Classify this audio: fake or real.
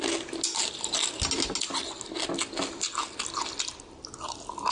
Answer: real